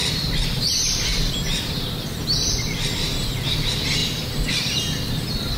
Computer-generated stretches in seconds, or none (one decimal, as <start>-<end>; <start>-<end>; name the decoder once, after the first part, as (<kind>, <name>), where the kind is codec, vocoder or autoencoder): 0.0-1.3 (vocoder, BigVGAN v2)

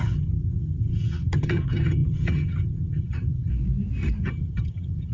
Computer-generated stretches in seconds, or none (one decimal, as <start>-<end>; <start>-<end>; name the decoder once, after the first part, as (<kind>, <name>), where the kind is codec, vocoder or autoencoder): 0.0-3.5 (vocoder, HiFi-GAN); 4.2-5.1

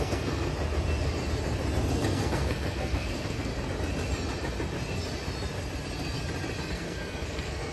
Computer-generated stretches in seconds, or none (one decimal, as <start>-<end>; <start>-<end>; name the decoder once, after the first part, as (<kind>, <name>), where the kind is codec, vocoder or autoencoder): 0.0-0.5 (codec, SNAC); 1.9-3.5; 6.7-7.7

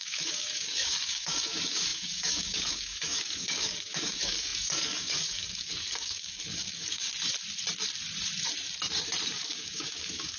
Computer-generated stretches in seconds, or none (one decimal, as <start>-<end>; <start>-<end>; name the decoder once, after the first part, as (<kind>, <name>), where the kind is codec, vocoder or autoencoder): 0.0-7.1 (codec, DAC); 9.3-10.4

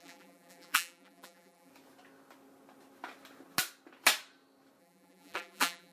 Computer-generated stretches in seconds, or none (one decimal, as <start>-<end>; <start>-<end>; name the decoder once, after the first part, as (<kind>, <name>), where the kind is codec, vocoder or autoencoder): 0.0-1.7 (vocoder, BigVGAN v2); 4.8-5.9

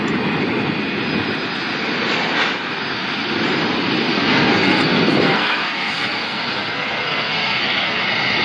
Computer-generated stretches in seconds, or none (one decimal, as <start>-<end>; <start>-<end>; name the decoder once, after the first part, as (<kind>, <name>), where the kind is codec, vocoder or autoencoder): 4.1-8.0 (codec, SNAC)

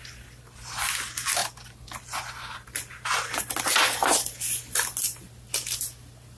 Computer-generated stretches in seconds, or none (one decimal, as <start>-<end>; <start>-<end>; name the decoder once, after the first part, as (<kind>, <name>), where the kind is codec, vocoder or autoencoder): none